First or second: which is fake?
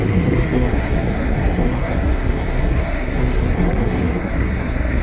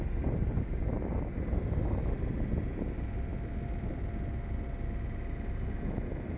first